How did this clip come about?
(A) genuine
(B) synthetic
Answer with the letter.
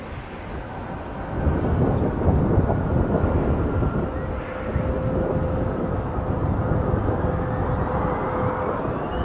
A